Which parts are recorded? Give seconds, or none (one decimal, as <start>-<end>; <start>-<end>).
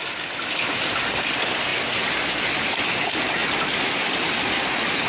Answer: 0.0-5.1